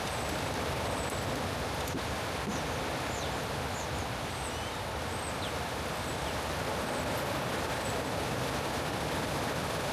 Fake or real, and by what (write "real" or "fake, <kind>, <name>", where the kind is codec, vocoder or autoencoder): real